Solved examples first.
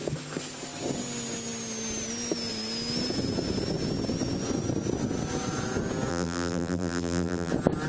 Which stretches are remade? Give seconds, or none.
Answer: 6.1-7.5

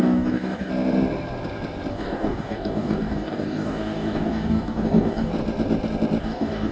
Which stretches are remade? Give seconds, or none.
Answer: 0.0-0.7; 1.9-5.3; 6.2-6.7

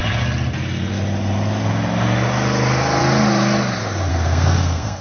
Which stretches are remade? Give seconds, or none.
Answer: 4.1-5.0

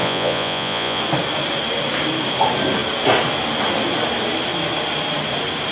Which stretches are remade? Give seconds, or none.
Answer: 0.0-1.0

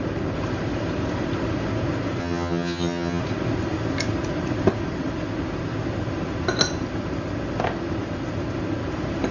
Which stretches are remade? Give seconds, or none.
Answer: 2.2-3.2

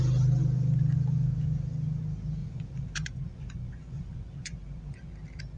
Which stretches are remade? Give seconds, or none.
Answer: 2.4-5.1

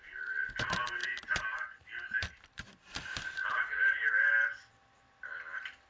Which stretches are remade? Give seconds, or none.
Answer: 1.0-1.9; 3.4-4.1